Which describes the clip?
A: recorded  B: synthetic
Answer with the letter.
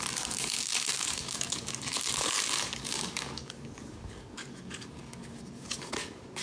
B